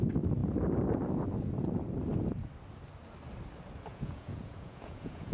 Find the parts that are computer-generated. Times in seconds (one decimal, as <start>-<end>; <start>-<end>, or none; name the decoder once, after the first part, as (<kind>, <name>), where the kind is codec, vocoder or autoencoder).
3.9-5.3 (vocoder, Vocos)